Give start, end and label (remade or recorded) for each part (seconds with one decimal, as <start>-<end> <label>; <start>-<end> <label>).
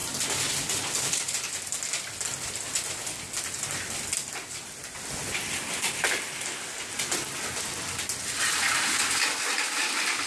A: 0.0-10.3 recorded